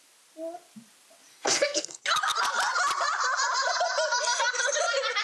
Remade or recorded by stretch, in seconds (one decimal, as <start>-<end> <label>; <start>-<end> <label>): 0.0-1.3 recorded; 1.3-2.0 remade; 2.0-5.2 recorded